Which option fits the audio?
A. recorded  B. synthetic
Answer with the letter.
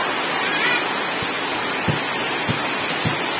A